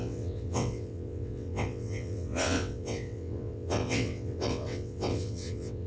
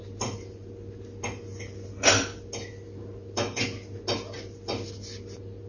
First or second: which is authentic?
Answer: second